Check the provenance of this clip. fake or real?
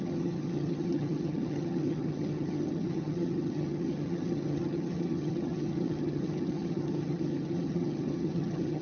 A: fake